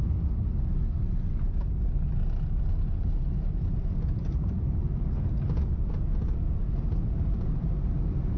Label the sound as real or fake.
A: real